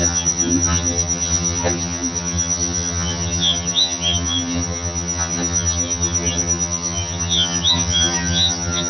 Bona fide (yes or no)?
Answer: no